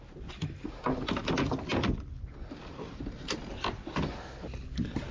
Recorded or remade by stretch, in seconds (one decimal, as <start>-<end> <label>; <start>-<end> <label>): 0.0-5.1 recorded